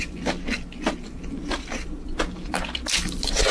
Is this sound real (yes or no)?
yes